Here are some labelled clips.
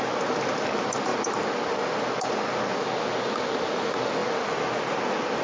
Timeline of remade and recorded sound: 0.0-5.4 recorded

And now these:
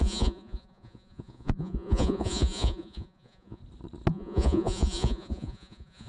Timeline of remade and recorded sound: 0.0-3.6 remade; 3.6-4.1 recorded; 4.1-6.1 remade

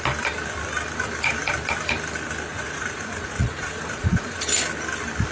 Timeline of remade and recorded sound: 0.0-2.5 recorded; 2.5-4.4 remade; 4.4-5.3 recorded

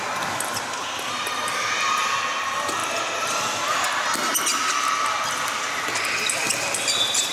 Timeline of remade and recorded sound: 0.0-7.3 recorded

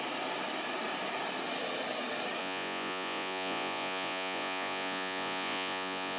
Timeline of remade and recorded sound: 0.0-2.4 recorded; 2.4-6.2 remade

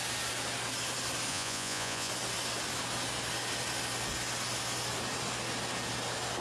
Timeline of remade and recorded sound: 0.0-1.3 recorded; 1.3-2.1 remade; 2.1-6.4 recorded